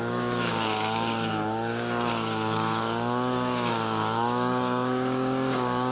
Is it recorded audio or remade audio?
remade